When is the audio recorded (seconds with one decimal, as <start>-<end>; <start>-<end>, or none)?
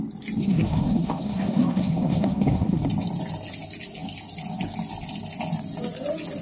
0.0-0.4; 2.9-6.4